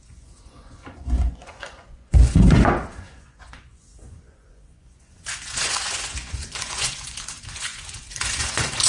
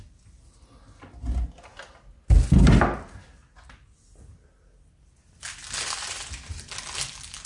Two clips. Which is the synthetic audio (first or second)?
first